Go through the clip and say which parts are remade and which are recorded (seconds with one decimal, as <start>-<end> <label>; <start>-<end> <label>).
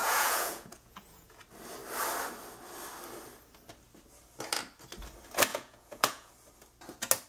0.0-1.4 remade; 1.4-5.5 recorded; 5.5-6.3 remade; 6.3-7.3 recorded